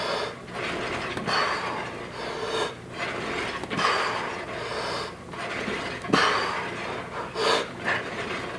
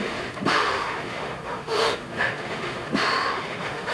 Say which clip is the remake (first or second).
second